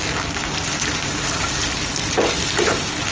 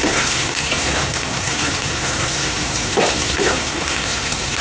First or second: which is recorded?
first